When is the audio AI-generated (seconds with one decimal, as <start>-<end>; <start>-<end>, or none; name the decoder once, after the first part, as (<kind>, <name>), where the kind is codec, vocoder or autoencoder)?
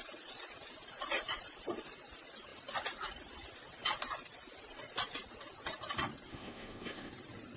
6.3-7.1 (codec, SNAC)